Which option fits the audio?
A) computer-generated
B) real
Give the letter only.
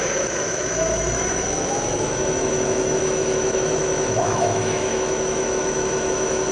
A